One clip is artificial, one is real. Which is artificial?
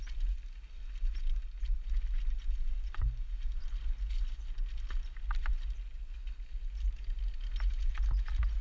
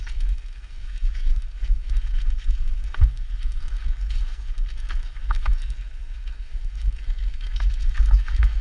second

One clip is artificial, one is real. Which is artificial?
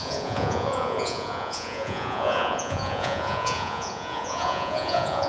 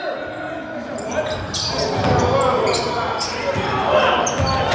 first